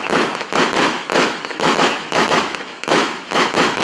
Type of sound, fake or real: fake